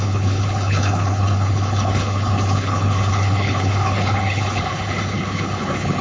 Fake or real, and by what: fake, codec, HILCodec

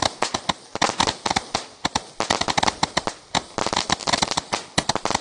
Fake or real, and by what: real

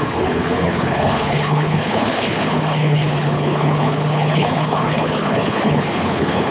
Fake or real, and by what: fake, codec, HILCodec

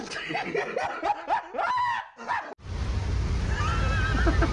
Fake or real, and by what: real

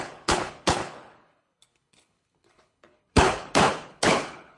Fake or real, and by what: fake, codec, HILCodec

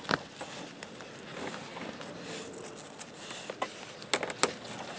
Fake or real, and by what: real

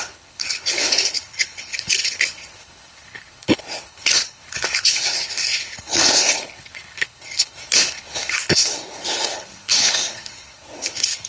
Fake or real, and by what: fake, codec, HILCodec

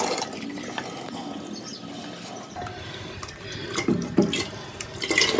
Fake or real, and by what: real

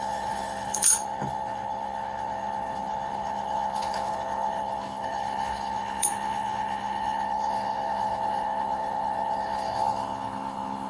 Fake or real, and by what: fake, codec, HILCodec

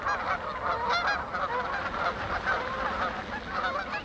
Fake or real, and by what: real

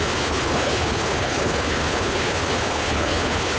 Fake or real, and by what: fake, codec, HILCodec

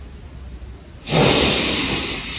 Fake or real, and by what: real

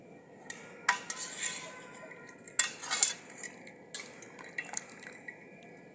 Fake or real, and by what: real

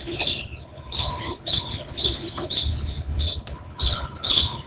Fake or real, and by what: fake, codec, HILCodec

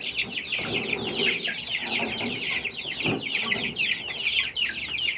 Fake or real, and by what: real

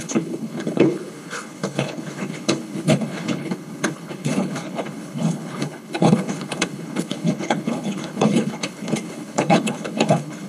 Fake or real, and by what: fake, codec, HILCodec